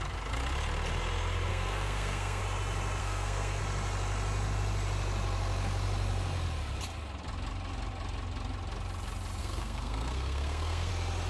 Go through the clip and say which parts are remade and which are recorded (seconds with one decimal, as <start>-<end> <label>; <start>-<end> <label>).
0.0-1.5 recorded; 1.5-2.4 remade; 2.4-3.0 recorded; 3.0-3.6 remade; 3.6-9.4 recorded; 9.4-10.9 remade; 10.9-11.3 recorded